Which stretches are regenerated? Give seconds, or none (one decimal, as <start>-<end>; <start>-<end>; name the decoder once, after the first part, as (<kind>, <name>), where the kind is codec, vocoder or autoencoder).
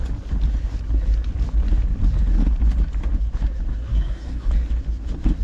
3.7-4.5 (codec, SNAC)